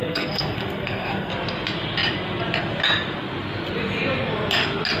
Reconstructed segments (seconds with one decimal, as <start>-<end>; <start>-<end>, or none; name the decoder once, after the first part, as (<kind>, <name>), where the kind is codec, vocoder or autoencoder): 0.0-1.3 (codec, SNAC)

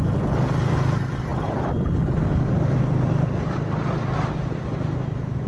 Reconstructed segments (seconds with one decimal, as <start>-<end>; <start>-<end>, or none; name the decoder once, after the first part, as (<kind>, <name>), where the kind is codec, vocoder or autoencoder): none

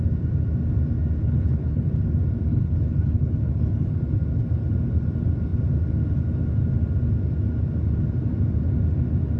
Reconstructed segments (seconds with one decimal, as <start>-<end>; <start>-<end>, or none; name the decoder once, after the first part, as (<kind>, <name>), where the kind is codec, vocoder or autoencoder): 1.2-1.9 (codec, HILCodec); 2.5-3.9